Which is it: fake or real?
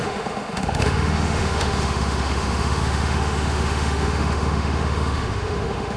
fake